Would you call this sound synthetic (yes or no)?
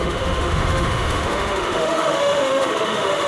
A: yes